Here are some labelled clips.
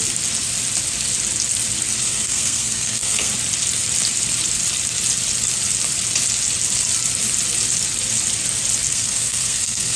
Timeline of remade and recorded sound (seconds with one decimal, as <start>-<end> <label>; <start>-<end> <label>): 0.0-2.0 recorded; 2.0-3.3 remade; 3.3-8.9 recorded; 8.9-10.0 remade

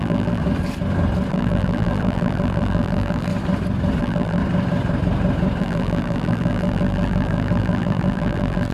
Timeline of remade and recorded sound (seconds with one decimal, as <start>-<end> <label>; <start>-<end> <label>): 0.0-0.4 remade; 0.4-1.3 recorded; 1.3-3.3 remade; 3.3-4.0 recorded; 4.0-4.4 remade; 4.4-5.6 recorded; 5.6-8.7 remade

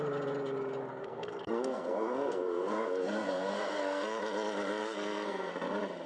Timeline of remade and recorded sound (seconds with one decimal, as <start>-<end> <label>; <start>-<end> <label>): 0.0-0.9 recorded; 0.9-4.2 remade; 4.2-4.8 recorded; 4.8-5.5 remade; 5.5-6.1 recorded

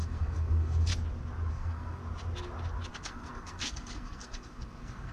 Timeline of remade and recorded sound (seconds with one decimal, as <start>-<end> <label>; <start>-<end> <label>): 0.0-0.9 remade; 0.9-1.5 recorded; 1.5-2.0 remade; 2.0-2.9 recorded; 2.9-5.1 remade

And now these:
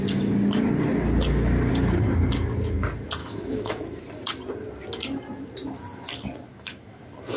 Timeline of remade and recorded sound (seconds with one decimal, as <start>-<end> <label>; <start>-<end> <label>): 0.0-3.2 recorded; 3.2-3.8 remade; 3.8-6.5 recorded; 6.5-7.0 remade; 7.0-7.4 recorded

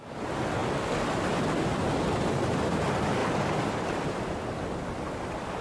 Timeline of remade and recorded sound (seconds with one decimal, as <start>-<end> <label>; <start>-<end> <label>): 0.0-3.2 recorded; 3.2-4.4 remade; 4.4-5.6 recorded

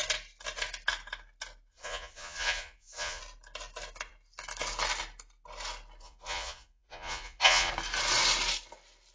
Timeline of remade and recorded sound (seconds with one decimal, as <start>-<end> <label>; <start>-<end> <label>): 0.0-1.7 recorded; 1.7-3.2 remade; 3.2-6.0 recorded; 6.0-7.7 remade; 7.7-9.1 recorded

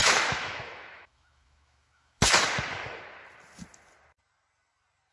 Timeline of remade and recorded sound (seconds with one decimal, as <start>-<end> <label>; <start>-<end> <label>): 0.0-2.2 remade; 2.2-5.1 recorded